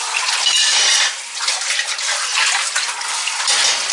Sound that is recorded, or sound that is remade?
recorded